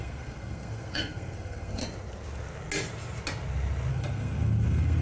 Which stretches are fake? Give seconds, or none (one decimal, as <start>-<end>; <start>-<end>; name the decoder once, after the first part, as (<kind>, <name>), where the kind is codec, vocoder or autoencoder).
0.0-1.8 (codec, SNAC); 3.9-5.0